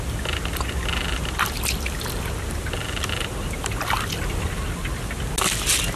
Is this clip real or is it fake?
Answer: real